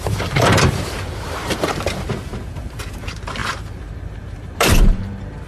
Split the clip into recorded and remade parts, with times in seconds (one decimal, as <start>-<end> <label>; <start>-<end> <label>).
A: 0.0-5.5 remade